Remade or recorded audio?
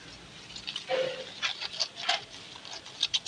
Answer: recorded